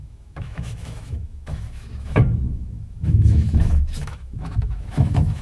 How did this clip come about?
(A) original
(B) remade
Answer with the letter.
B